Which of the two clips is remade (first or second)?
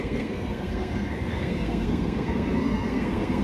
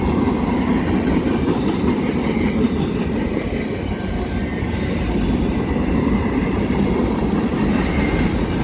first